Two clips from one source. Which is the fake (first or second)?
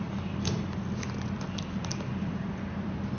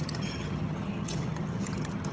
second